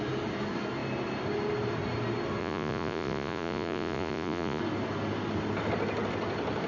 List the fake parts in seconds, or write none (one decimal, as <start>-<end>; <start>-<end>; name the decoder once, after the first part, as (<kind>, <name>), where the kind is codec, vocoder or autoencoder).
2.4-4.6 (vocoder, Vocos)